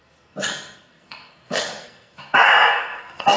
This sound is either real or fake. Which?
fake